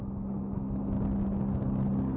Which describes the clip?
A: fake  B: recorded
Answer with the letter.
B